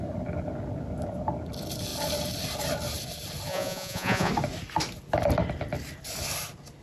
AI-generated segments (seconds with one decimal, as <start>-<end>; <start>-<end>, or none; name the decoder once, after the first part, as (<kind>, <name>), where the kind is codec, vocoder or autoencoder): 3.5-4.3 (vocoder, Vocos)